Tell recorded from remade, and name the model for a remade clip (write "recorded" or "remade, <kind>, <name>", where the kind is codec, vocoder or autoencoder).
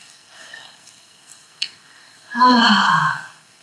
remade, codec, SNAC